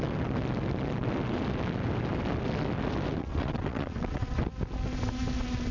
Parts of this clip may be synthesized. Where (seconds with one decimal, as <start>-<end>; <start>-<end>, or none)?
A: 3.2-4.4